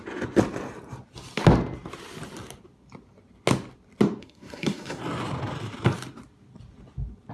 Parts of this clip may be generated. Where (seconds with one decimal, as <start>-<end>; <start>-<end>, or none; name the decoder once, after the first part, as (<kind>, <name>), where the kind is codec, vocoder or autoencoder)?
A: 4.2-5.0 (codec, SNAC)